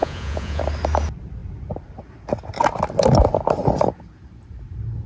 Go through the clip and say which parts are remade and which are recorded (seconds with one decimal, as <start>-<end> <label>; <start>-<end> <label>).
0.0-0.6 remade; 0.6-5.1 recorded